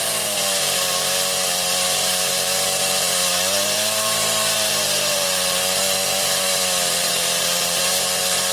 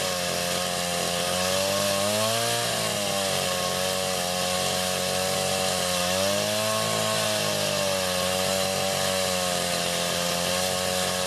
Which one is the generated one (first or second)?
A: first